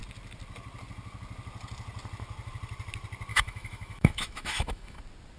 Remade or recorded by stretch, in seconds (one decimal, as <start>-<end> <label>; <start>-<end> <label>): 0.0-3.3 recorded; 3.3-5.0 remade; 5.0-5.4 recorded